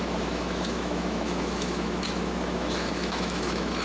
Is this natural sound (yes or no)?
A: no